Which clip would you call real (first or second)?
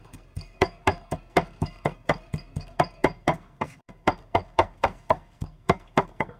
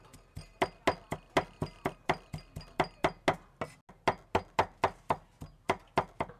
second